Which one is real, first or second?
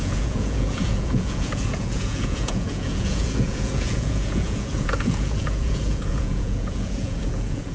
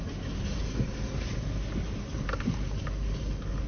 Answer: second